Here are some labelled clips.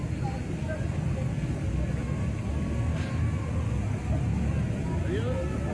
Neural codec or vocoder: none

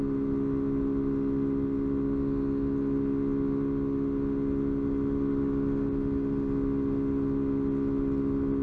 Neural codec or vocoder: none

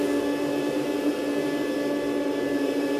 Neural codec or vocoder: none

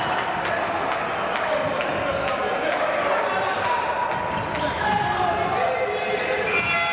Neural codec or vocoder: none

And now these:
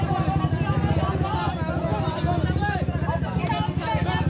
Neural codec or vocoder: none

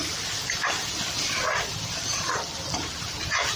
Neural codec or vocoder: none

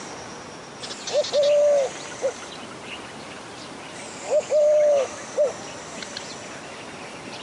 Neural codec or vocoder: none